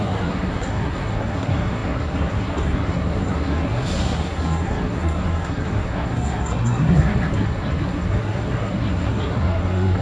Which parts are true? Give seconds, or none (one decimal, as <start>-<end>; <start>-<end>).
none